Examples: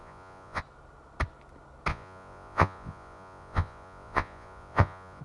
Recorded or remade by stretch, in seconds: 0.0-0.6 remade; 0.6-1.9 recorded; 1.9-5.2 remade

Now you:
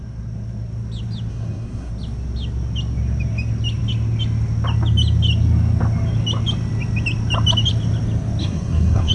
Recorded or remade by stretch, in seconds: 0.0-1.3 recorded; 1.3-1.9 remade; 1.9-8.4 recorded; 8.4-9.1 remade

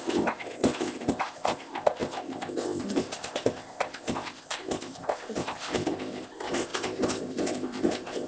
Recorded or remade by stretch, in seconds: 0.0-8.3 remade

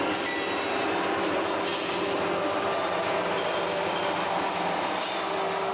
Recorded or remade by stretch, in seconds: 0.0-5.7 recorded

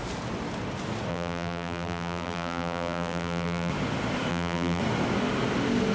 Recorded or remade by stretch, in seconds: 0.0-1.1 recorded; 1.1-3.7 remade; 3.7-4.3 recorded; 4.3-4.8 remade; 4.8-5.9 recorded

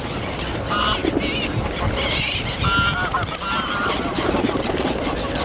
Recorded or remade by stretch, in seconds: 0.0-5.4 recorded

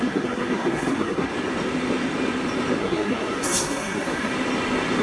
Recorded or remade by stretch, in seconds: 0.0-1.3 remade; 1.3-2.8 recorded; 2.8-4.3 remade; 4.3-5.0 recorded

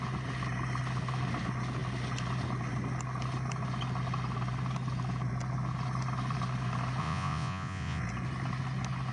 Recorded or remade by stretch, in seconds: 0.0-7.0 recorded; 7.0-8.0 remade; 8.0-9.1 recorded